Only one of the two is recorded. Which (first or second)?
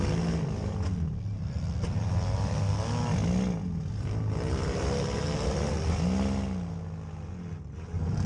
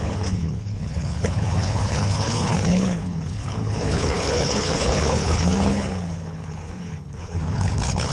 first